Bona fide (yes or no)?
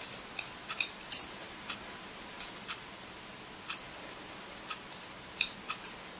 yes